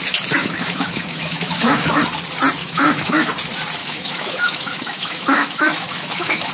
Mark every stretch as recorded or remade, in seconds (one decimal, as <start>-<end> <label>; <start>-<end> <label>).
0.0-0.4 recorded; 0.4-2.0 remade; 2.0-2.6 recorded; 2.6-3.3 remade; 3.3-3.8 recorded; 3.8-6.5 remade